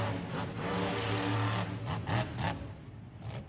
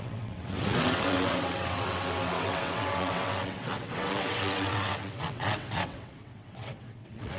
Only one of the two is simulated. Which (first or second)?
second